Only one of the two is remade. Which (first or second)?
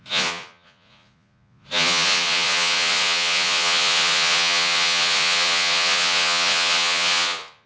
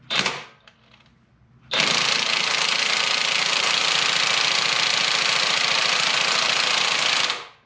first